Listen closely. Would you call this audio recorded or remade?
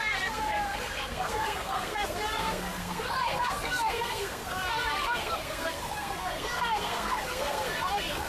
remade